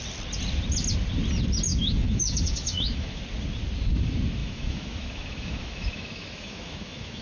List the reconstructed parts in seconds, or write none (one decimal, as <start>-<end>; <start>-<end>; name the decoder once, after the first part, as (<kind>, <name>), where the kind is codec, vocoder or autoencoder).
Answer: 1.7-3.2 (autoencoder, DAC-VAE); 4.4-7.2